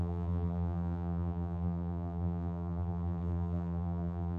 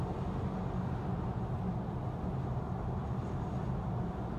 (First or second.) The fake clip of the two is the first